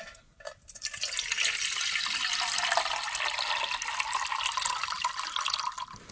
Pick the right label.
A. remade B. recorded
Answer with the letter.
B